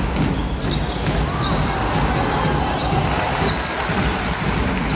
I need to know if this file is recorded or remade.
recorded